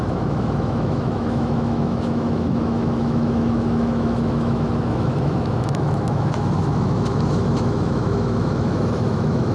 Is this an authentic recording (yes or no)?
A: no